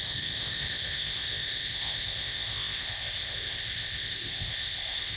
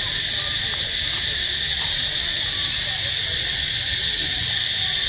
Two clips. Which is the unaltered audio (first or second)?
second